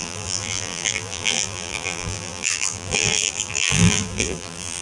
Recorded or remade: remade